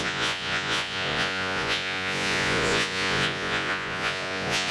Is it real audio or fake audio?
fake